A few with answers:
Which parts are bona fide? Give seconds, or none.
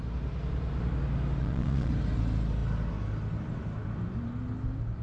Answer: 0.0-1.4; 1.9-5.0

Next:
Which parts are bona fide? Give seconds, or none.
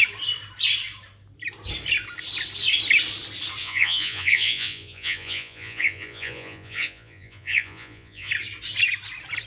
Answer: 0.0-3.6; 8.3-9.5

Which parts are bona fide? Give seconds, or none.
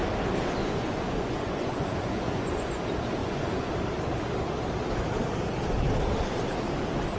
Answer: 0.0-0.6; 2.8-3.2; 3.7-7.2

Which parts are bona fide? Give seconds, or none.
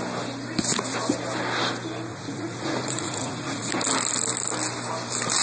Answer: 0.0-2.1; 3.7-5.4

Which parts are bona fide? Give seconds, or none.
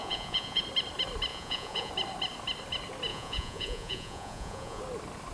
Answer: 0.6-1.3; 1.9-3.1; 4.8-5.3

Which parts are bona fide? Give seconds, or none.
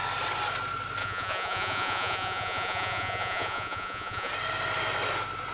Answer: 0.0-1.0; 4.3-5.5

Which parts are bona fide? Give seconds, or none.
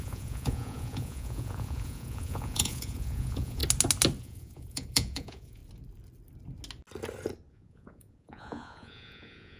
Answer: 3.6-4.2; 5.6-7.5